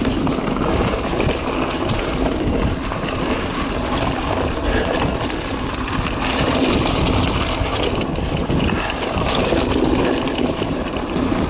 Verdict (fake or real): real